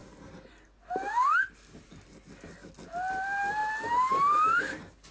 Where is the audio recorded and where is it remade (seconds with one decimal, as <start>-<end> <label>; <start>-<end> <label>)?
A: 0.0-5.1 recorded